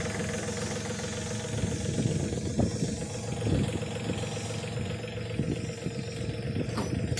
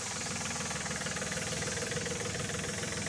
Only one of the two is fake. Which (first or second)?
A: second